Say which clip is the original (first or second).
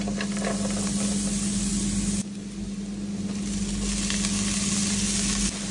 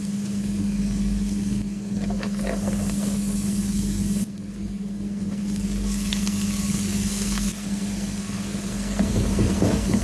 first